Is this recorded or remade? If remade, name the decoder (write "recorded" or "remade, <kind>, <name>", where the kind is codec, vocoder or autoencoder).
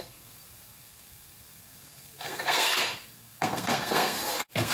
remade, codec, SNAC